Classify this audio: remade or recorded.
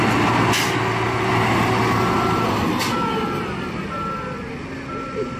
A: recorded